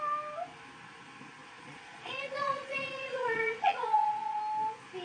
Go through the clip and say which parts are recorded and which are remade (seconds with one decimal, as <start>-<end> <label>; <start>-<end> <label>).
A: 0.0-1.4 recorded; 1.4-4.4 remade; 4.4-5.0 recorded